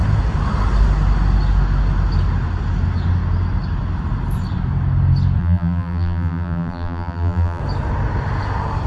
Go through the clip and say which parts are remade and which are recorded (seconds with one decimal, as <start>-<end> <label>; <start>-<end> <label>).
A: 0.0-5.4 recorded; 5.4-7.6 remade; 7.6-8.9 recorded